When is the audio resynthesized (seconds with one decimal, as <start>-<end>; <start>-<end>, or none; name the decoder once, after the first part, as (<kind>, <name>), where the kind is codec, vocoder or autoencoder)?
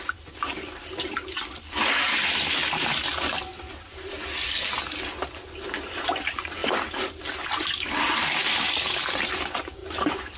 0.0-3.5 (vocoder, BigVGAN v2); 4.3-6.6; 7.2-10.4